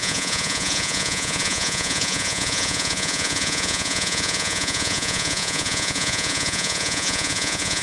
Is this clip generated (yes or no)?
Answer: yes